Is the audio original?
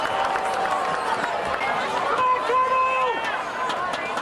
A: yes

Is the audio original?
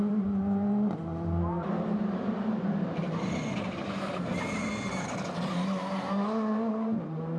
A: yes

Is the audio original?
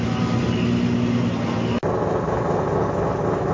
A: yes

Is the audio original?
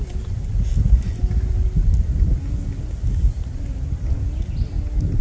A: yes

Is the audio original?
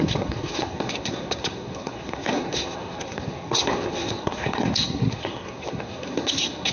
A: no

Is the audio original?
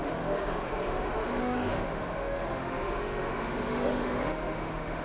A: no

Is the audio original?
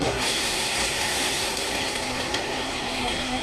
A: no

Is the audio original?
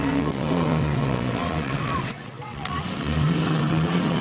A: no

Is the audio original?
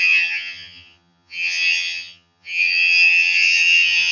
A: no